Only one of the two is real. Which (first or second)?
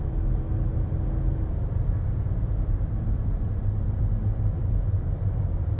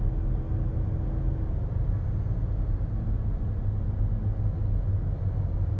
second